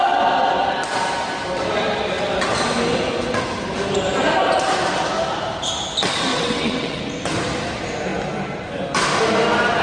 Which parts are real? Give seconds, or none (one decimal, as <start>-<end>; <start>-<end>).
0.0-6.3; 7.0-9.8